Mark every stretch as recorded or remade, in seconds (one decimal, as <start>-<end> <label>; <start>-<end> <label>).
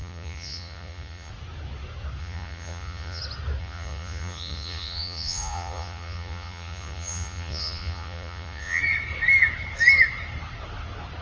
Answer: 0.0-1.3 remade; 1.3-2.2 recorded; 2.2-3.2 remade; 3.2-3.6 recorded; 3.6-8.8 remade; 8.8-11.2 recorded